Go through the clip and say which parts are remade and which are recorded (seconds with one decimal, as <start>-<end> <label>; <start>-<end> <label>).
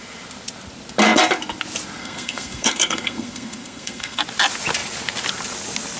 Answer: 0.0-2.0 recorded; 2.0-4.2 remade; 4.2-6.0 recorded